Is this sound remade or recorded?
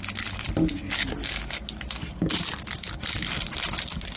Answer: recorded